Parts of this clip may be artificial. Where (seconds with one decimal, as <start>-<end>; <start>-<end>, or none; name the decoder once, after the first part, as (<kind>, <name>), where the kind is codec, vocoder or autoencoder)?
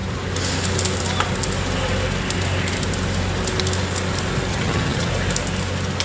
4.5-5.1 (vocoder, HiFi-GAN)